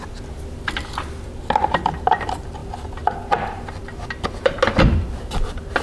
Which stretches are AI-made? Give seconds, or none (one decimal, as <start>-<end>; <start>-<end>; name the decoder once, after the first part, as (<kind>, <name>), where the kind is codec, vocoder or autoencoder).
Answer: none